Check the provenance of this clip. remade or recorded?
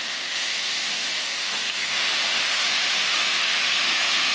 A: remade